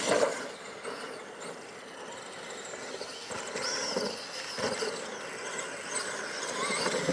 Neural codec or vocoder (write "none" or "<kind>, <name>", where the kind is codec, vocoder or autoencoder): none